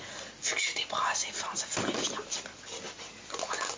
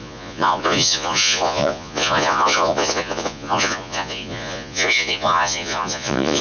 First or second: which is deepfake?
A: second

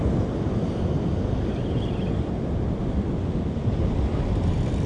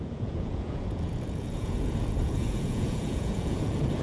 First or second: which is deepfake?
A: second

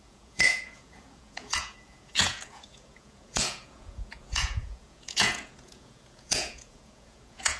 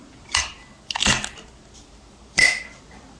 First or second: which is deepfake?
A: first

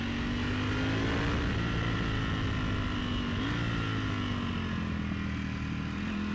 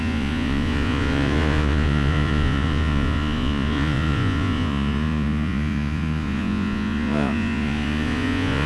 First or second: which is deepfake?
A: second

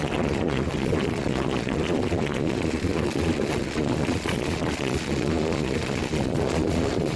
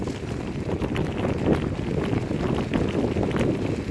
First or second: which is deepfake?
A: first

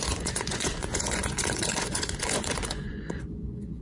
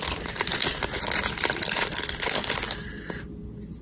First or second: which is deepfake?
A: first